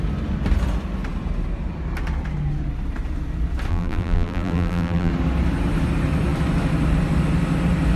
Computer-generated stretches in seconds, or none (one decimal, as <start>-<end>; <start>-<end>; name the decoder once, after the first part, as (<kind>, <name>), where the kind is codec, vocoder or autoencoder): 3.7-5.1 (vocoder, BigVGAN v2)